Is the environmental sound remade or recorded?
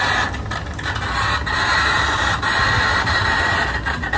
recorded